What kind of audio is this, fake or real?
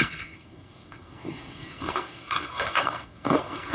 fake